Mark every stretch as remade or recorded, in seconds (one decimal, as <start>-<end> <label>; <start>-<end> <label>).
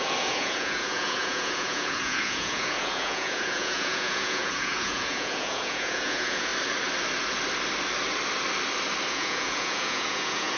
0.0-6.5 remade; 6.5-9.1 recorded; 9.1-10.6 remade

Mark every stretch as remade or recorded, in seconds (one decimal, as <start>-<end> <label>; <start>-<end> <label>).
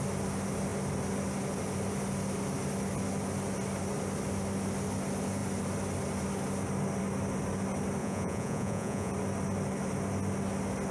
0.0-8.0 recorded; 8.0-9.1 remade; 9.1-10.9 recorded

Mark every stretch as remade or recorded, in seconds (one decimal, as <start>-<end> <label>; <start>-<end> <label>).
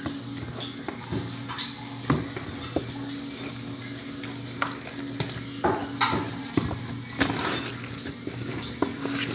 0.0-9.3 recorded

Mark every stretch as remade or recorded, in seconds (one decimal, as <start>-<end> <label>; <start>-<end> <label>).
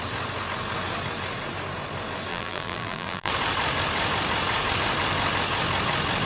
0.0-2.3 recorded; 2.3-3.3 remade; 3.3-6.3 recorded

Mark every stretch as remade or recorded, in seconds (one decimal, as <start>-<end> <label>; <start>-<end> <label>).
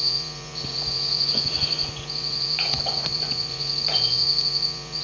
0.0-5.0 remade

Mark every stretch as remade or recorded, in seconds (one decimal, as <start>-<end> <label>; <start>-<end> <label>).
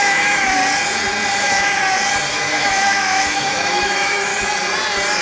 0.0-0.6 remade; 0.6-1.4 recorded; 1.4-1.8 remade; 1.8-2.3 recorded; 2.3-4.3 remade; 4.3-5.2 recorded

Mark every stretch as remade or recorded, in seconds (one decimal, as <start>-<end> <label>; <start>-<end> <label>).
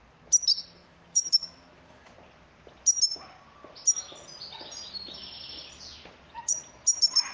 0.0-0.8 recorded; 0.8-2.1 remade; 2.1-7.3 recorded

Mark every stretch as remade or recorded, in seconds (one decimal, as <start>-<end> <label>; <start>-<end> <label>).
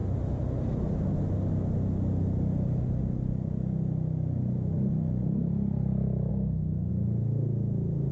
0.0-6.3 recorded; 6.3-6.9 remade; 6.9-8.1 recorded